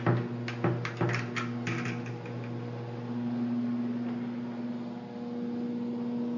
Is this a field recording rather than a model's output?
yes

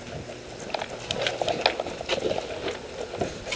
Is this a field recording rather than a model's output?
yes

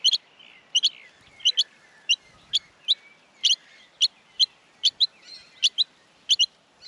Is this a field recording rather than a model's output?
yes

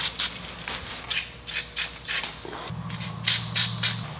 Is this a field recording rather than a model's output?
yes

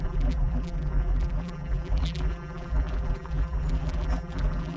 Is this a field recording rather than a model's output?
no